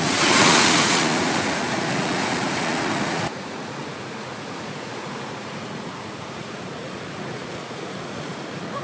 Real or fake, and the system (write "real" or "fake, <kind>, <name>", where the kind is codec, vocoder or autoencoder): fake, vocoder, Vocos